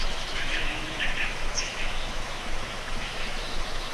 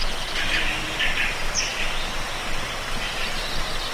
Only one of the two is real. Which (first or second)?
second